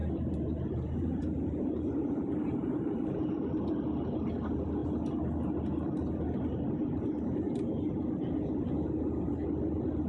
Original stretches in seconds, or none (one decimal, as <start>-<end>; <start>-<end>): 3.1-10.1